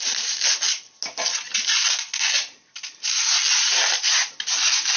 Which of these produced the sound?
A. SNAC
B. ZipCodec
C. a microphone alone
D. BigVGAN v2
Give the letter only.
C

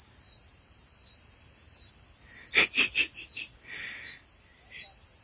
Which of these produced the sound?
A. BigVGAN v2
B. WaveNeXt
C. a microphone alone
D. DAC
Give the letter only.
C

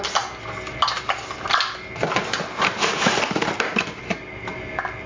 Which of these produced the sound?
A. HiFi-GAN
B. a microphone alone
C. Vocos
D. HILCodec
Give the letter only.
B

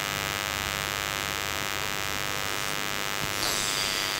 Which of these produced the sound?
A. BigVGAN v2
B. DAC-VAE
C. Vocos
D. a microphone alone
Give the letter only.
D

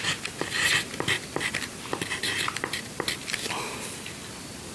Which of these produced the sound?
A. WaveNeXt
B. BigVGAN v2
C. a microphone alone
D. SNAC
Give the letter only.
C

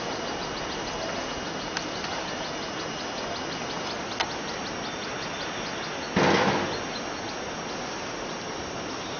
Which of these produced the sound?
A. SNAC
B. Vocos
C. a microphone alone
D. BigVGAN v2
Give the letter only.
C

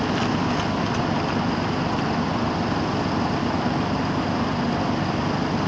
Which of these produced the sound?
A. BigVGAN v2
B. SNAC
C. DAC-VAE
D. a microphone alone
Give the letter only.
D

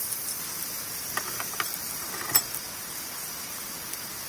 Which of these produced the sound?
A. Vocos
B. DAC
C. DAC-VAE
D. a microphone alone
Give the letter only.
D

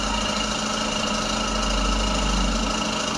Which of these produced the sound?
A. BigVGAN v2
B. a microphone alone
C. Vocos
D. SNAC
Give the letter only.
B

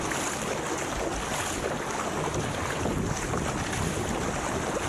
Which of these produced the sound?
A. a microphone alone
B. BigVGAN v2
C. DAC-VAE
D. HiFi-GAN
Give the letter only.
A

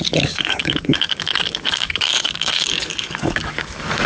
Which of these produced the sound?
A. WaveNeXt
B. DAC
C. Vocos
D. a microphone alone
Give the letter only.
B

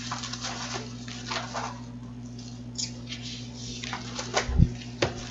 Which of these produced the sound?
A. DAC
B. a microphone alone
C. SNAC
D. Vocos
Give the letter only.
B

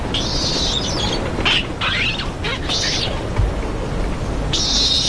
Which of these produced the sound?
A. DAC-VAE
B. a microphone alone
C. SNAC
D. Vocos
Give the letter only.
B